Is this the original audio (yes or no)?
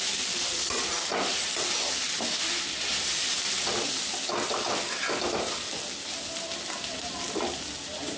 yes